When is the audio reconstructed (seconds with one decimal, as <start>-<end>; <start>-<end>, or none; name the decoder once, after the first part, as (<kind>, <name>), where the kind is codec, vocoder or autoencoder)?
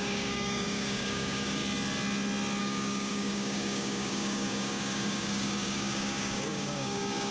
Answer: 0.0-1.6 (codec, DAC); 2.6-7.3